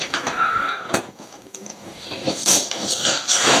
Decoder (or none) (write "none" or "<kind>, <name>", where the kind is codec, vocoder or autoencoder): codec, DAC